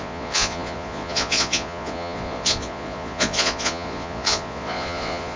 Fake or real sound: fake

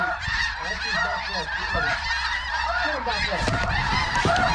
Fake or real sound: fake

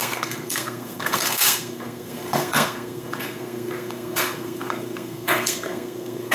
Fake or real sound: fake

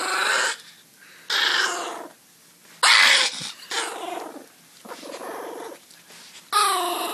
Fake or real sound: real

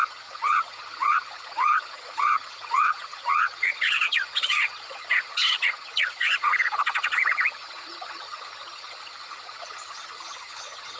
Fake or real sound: fake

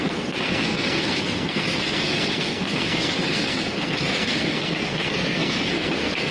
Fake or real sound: fake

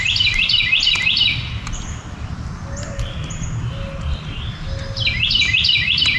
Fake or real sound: real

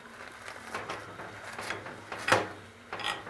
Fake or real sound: real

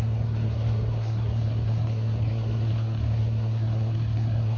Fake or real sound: fake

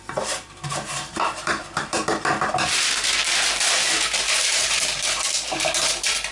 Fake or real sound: fake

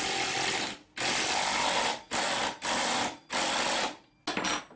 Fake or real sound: real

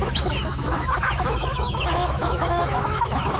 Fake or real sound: fake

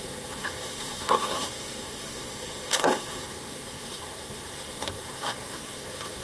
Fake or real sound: fake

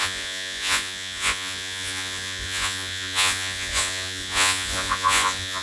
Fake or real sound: fake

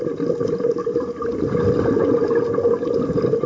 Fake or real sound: real